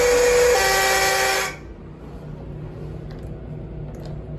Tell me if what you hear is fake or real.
real